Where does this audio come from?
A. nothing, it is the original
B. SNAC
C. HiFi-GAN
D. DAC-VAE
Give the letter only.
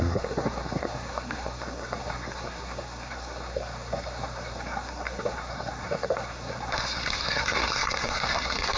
B